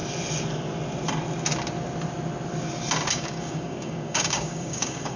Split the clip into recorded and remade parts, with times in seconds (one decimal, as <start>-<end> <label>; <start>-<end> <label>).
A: 0.0-3.1 recorded; 3.1-5.2 remade